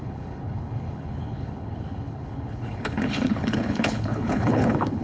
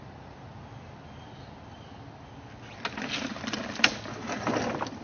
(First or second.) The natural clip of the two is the second